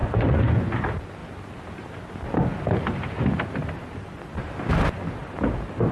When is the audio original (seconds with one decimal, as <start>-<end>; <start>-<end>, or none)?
0.7-5.9